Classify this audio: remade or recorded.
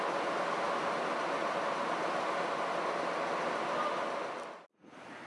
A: recorded